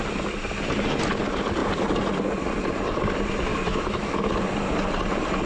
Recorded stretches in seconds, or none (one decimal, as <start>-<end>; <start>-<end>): 0.0-3.5; 4.3-5.5